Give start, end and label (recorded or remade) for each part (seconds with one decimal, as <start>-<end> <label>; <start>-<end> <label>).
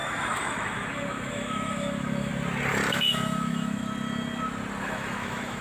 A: 0.0-2.3 remade; 2.3-2.9 recorded; 2.9-3.8 remade; 3.8-4.8 recorded; 4.8-5.6 remade